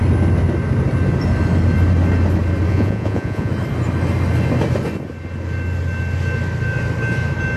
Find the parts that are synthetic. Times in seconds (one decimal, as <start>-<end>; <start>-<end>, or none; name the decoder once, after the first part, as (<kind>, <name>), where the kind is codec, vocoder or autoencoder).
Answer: 2.7-3.5 (vocoder, Vocos)